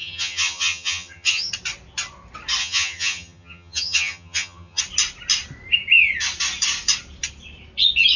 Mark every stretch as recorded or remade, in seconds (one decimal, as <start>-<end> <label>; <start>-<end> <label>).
0.0-1.5 remade; 1.5-2.6 recorded; 2.6-4.8 remade; 4.8-8.2 recorded